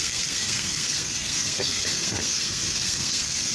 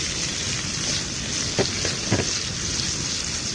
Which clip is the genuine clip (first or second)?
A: second